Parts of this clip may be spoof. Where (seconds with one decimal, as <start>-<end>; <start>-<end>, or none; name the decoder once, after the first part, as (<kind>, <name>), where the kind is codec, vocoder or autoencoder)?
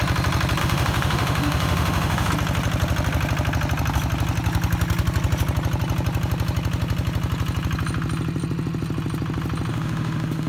0.6-2.3 (autoencoder, DAC-VAE); 9.7-10.5